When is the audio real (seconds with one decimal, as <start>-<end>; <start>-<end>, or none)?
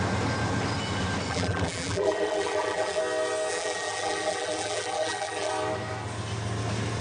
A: 0.0-1.3; 3.0-3.5; 5.5-7.0